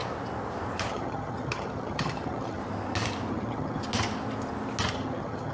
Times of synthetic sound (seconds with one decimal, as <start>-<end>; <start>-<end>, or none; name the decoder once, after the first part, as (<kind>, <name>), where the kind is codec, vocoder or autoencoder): 0.9-2.6 (vocoder, HiFi-GAN); 3.3-3.8; 4.9-5.5